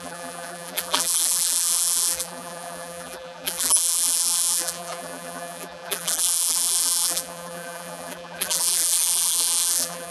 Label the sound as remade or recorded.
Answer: remade